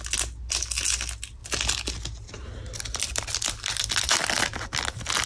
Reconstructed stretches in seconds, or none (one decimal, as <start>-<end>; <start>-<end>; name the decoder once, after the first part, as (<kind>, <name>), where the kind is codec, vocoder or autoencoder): none